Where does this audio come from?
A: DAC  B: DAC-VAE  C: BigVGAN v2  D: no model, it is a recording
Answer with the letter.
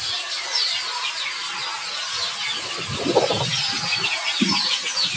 D